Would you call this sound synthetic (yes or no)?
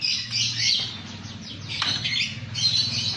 no